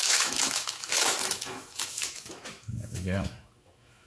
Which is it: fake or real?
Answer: fake